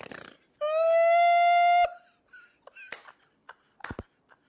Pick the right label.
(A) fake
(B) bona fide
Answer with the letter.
B